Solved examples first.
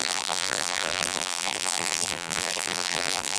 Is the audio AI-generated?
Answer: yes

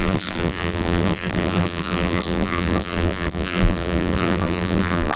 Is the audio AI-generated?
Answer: yes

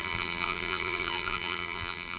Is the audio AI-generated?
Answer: yes